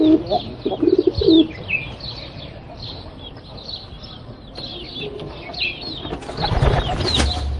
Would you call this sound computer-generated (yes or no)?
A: no